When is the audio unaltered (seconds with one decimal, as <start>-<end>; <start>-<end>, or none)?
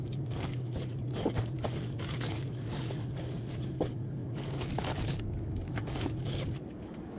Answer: none